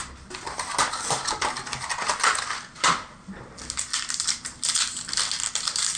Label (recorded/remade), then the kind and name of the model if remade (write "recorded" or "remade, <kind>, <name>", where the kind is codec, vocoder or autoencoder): recorded